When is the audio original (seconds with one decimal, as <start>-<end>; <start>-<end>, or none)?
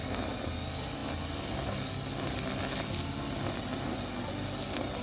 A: 0.0-5.0